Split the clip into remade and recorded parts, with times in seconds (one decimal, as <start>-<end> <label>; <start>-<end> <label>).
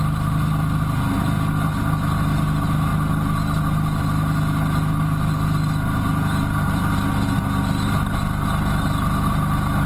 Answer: 0.0-9.9 recorded